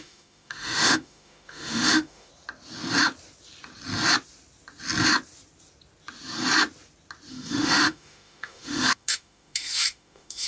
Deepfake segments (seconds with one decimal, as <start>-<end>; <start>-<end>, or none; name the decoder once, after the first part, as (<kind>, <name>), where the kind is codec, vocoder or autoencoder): 0.0-2.3 (autoencoder, DAC-VAE); 7.3-10.5